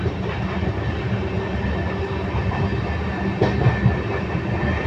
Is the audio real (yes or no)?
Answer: yes